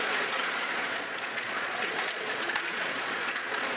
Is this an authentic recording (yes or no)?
no